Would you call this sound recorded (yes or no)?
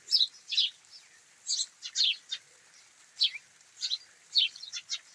yes